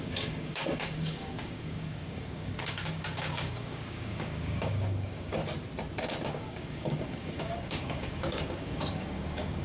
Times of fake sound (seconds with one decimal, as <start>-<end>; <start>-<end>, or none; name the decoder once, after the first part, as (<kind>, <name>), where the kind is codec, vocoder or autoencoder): 0.0-5.4 (codec, DAC); 6.3-9.6